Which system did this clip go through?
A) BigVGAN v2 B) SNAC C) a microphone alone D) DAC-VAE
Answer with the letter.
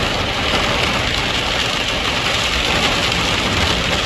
C